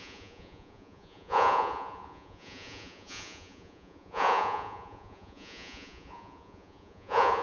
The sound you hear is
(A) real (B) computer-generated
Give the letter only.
B